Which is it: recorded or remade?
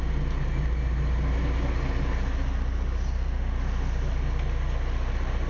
recorded